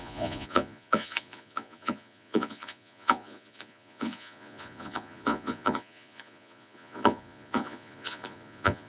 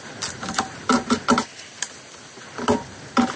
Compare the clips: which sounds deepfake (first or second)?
first